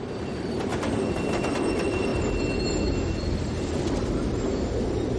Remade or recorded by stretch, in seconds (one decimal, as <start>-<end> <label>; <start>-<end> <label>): 0.0-2.1 remade; 2.1-3.8 recorded; 3.8-5.2 remade